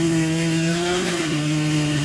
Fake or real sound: fake